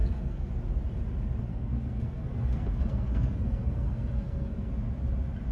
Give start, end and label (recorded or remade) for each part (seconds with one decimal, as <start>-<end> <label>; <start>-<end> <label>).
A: 0.0-0.5 remade; 0.5-1.5 recorded; 1.5-4.7 remade; 4.7-5.5 recorded